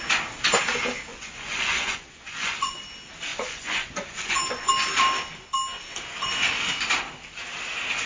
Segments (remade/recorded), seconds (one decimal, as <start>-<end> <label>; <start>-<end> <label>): 0.0-1.1 recorded; 1.1-2.8 remade; 2.8-3.3 recorded; 3.3-4.7 remade; 4.7-8.1 recorded